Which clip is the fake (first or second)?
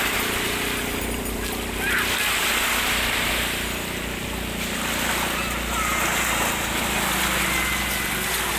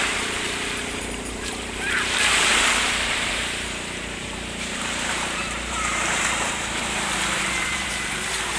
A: second